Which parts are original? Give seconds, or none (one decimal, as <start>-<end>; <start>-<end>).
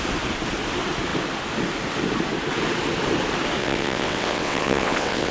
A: 0.0-3.6